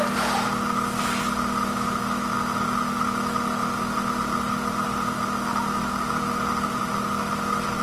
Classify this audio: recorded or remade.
recorded